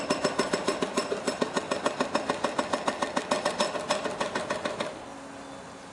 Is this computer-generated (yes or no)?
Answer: no